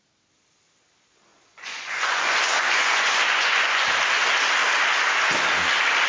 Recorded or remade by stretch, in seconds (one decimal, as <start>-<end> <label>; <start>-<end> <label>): 0.0-1.3 recorded; 1.3-3.9 remade; 3.9-6.1 recorded